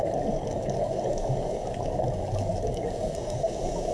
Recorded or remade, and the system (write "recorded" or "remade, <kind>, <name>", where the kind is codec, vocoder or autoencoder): remade, codec, DAC